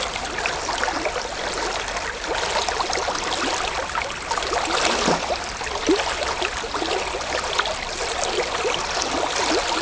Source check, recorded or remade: recorded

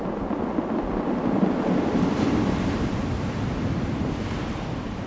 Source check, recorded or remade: recorded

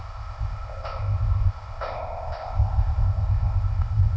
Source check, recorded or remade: remade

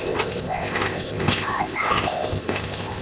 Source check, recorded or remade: remade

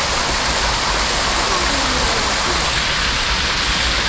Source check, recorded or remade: recorded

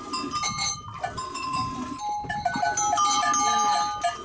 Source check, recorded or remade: recorded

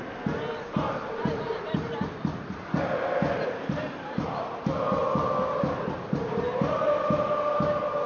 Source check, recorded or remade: recorded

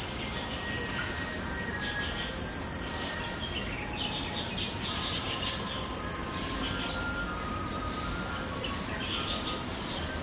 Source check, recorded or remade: recorded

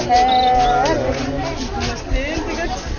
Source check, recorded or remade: recorded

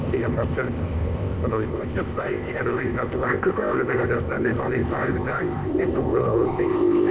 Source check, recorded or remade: remade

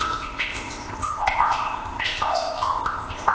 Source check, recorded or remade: remade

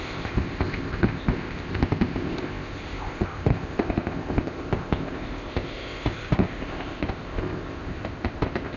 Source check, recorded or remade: remade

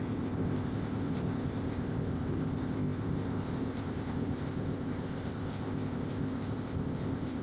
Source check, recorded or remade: remade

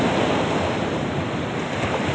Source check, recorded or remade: recorded